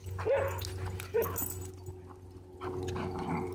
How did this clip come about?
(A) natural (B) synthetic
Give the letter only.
A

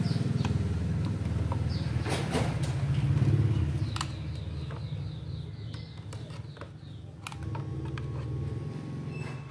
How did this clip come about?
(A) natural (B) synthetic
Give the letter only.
A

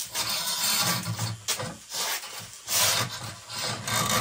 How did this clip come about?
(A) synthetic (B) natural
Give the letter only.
B